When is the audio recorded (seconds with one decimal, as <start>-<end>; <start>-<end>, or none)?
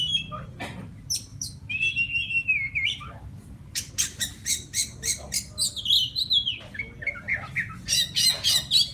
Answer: 0.0-1.3; 3.9-7.3; 7.8-8.9